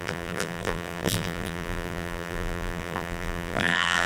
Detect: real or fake fake